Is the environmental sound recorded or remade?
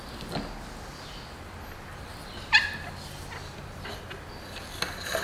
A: recorded